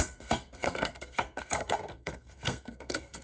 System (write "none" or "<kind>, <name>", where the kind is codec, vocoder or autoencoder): codec, SNAC